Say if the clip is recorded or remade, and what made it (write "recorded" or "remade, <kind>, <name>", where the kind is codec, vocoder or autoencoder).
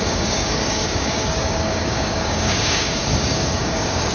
remade, codec, DAC